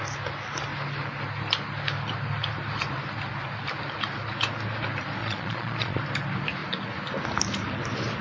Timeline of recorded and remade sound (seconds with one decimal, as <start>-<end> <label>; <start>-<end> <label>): 0.0-5.2 recorded; 5.2-6.0 remade; 6.0-8.2 recorded